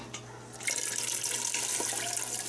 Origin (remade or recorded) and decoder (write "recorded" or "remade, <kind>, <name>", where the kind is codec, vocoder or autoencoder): recorded